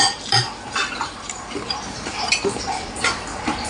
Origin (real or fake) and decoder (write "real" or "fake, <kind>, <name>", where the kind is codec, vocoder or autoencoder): fake, vocoder, BigVGAN v2